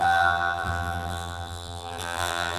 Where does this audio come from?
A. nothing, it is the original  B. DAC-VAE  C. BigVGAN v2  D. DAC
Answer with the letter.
C